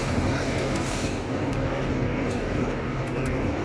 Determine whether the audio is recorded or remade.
remade